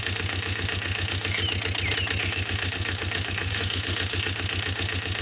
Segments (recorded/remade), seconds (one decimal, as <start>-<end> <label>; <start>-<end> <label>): 0.0-1.4 remade; 1.4-2.2 recorded; 2.2-5.2 remade